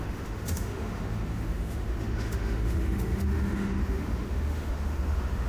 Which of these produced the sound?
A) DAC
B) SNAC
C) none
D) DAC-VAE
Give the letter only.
D